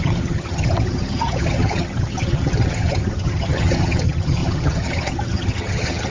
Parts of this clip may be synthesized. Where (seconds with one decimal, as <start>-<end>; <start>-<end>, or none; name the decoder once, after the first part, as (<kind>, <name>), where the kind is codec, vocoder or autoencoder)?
0.0-6.1 (vocoder, HiFi-GAN)